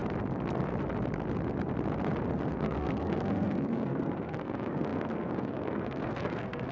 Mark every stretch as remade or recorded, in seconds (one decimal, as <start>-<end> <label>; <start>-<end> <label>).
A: 0.0-2.5 recorded; 2.5-6.7 remade